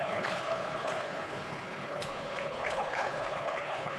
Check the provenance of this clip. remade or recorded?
remade